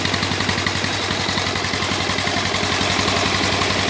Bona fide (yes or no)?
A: yes